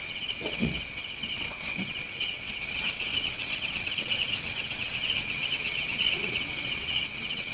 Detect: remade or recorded remade